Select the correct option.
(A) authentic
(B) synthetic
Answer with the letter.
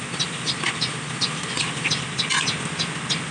A